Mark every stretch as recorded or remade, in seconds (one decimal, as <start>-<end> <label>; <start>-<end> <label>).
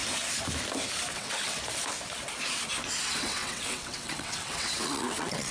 0.0-1.1 recorded; 1.1-1.6 remade; 1.6-3.0 recorded; 3.0-5.5 remade